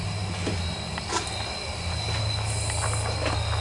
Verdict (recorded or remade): recorded